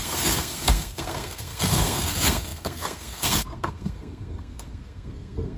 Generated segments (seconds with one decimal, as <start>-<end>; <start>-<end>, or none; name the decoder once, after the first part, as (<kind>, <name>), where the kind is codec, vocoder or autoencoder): 0.0-5.6 (codec, SNAC)